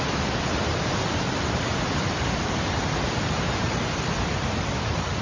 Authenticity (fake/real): fake